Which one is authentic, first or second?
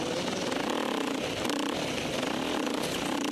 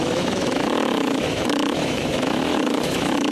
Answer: first